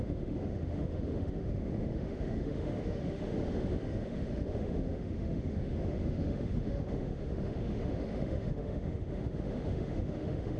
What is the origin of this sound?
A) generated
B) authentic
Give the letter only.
A